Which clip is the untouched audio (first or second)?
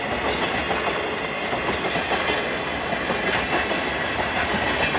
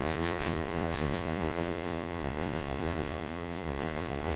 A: first